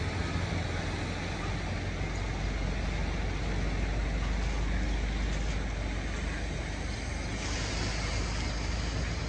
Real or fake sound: real